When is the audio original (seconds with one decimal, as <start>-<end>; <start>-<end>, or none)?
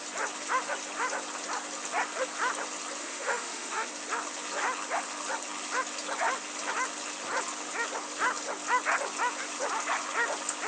0.0-3.0; 3.9-10.7